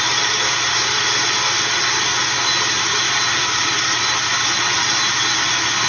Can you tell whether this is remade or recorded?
recorded